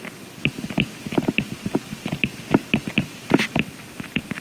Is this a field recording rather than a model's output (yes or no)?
no